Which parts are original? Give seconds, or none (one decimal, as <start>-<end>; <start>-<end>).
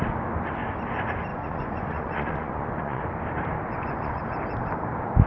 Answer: 0.0-1.3; 3.0-3.7; 4.2-5.3